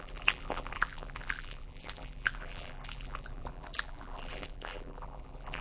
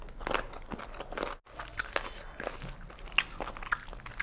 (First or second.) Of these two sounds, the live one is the second